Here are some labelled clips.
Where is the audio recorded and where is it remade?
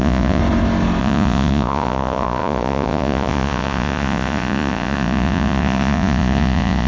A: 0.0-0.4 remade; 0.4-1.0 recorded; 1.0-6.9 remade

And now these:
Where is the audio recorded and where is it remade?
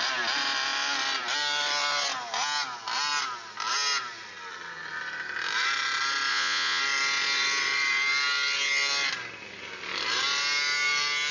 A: 0.0-6.3 recorded; 6.3-6.8 remade; 6.8-11.3 recorded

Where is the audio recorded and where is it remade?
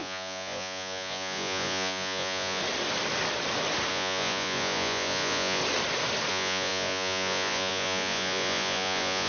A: 0.0-2.6 remade; 2.6-3.9 recorded; 3.9-5.6 remade; 5.6-6.3 recorded; 6.3-9.3 remade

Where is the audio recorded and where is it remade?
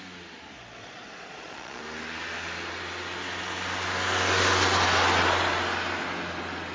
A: 0.0-0.8 recorded; 0.8-1.8 remade; 1.8-6.7 recorded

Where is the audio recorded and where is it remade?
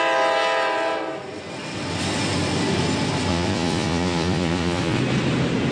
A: 0.0-3.3 recorded; 3.3-5.0 remade; 5.0-5.7 recorded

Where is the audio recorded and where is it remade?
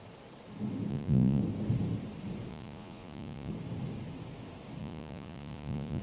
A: 0.0-0.9 recorded; 0.9-1.4 remade; 1.4-2.5 recorded; 2.5-3.5 remade; 3.5-4.8 recorded; 4.8-6.0 remade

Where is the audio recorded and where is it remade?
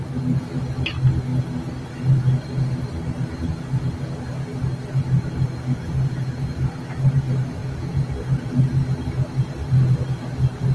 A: 0.0-7.6 recorded; 7.6-8.1 remade; 8.1-10.7 recorded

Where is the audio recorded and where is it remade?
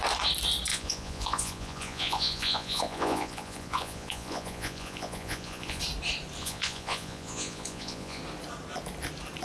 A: 0.0-0.7 recorded; 0.7-5.8 remade; 5.8-6.4 recorded; 6.4-8.2 remade; 8.2-9.4 recorded